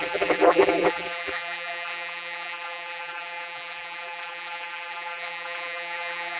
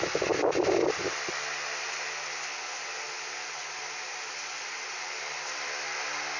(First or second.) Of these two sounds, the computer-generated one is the first